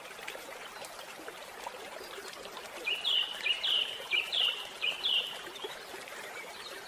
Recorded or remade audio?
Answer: remade